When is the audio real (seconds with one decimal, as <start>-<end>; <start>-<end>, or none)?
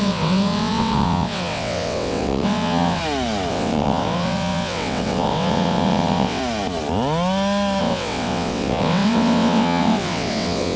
3.0-3.5; 6.4-7.8